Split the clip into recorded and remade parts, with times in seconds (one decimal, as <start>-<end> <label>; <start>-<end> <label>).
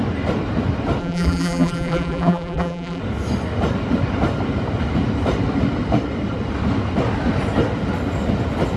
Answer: 0.0-1.0 recorded; 1.0-3.0 remade; 3.0-8.8 recorded